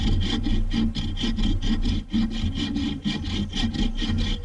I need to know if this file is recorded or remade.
recorded